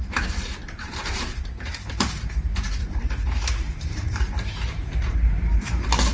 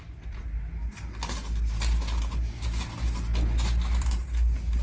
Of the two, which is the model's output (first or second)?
first